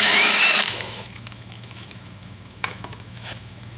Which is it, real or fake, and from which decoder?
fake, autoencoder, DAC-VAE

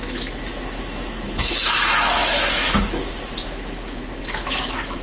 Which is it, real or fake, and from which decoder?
fake, autoencoder, DAC-VAE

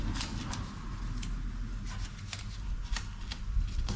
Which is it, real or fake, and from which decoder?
real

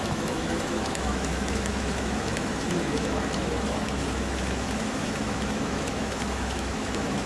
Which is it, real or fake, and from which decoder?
fake, autoencoder, DAC-VAE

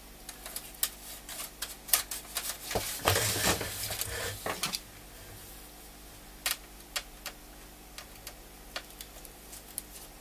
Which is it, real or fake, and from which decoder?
real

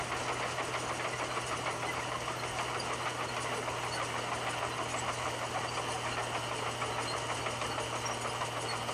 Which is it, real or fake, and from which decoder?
real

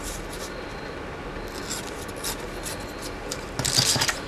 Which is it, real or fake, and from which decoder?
real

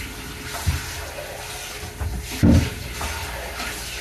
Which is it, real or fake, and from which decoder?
real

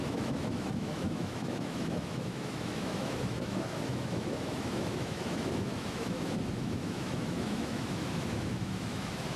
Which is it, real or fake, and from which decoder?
fake, autoencoder, DAC-VAE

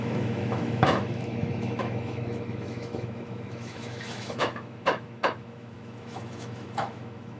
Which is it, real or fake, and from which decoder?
fake, autoencoder, DAC-VAE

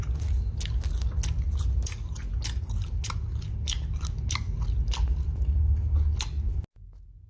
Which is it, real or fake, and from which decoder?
real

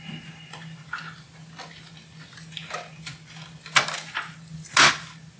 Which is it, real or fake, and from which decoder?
real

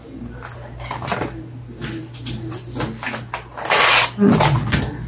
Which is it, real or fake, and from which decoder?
real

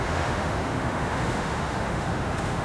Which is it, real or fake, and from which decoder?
fake, autoencoder, DAC-VAE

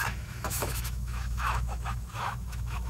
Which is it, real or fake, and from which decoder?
fake, autoencoder, DAC-VAE